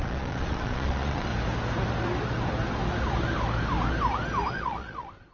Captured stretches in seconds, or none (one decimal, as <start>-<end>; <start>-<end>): 1.3-4.5